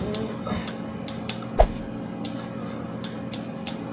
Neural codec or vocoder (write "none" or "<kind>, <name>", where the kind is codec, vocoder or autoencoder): none